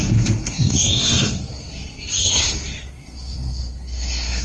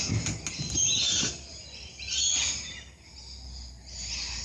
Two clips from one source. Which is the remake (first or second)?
first